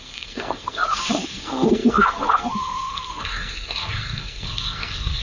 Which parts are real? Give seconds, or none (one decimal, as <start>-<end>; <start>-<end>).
none